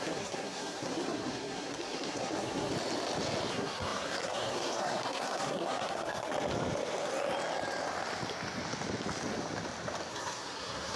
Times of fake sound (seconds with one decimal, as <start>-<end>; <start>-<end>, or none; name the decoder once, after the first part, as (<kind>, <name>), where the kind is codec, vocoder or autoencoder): 0.0-2.7 (codec, SNAC); 3.5-6.3; 10.1-11.0